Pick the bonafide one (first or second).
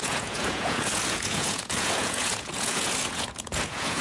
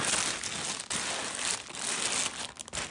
second